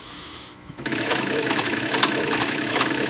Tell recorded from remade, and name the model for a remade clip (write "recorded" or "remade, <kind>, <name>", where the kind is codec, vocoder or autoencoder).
remade, autoencoder, DAC-VAE